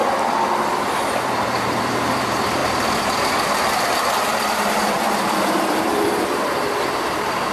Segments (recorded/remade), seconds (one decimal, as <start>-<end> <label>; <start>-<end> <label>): 0.0-1.1 recorded; 1.1-7.5 remade